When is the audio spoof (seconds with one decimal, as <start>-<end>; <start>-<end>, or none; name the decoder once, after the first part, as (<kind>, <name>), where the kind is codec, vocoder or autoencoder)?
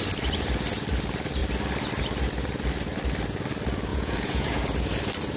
3.9-4.6 (vocoder, Vocos)